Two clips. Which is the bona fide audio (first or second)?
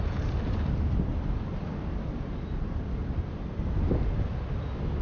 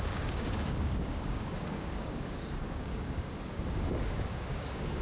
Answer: first